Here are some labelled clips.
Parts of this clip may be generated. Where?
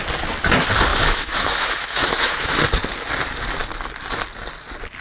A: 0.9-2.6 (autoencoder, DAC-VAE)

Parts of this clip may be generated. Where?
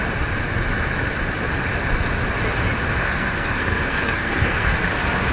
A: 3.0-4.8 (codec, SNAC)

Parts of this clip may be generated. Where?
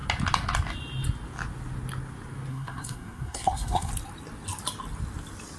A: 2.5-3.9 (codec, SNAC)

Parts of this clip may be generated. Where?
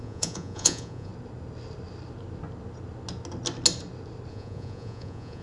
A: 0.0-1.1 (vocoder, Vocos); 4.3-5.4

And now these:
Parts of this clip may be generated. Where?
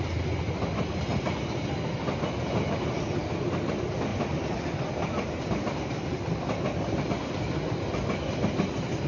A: none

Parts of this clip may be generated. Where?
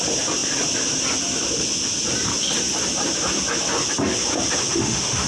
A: 4.7-5.3 (autoencoder, DAC-VAE)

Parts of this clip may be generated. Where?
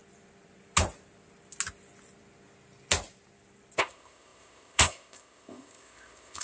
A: 3.8-6.4 (codec, ZipCodec)